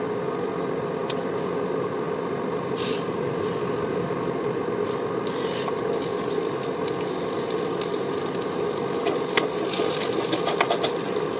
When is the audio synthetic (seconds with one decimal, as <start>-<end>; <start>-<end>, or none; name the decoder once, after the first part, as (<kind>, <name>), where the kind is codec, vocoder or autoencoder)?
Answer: none